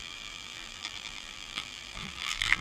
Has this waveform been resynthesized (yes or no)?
yes